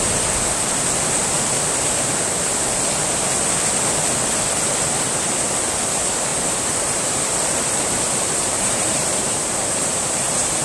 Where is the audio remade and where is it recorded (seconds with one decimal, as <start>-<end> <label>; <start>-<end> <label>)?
0.0-6.3 recorded; 6.3-10.6 remade